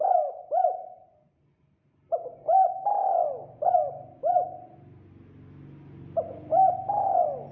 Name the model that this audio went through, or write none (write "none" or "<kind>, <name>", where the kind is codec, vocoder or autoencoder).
none